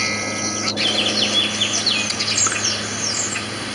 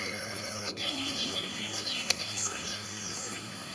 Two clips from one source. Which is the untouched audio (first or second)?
first